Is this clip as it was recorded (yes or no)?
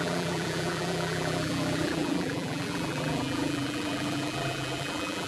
no